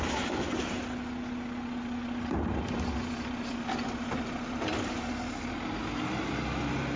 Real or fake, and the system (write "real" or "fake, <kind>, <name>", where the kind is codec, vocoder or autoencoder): real